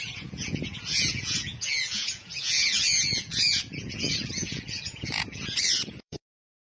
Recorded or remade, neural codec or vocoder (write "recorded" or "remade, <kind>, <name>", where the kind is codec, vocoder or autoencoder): remade, vocoder, Vocos